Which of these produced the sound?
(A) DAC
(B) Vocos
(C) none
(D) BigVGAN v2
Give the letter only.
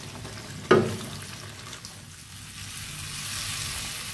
C